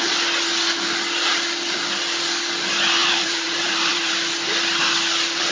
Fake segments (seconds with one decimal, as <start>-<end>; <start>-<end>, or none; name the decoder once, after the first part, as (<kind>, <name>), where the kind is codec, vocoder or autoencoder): 3.0-4.3 (vocoder, BigVGAN v2)